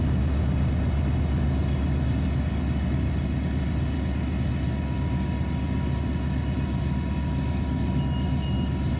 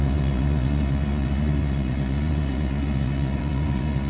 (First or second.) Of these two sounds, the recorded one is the first